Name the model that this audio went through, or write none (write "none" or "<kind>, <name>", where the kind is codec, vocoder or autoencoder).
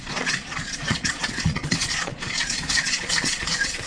vocoder, Vocos